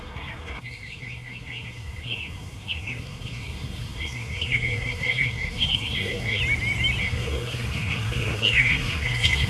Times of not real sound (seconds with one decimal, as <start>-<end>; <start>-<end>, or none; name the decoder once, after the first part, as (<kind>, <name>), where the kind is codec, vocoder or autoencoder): 0.0-6.4 (codec, SNAC); 7.0-9.5